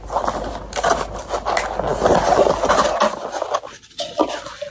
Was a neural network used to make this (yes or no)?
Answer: no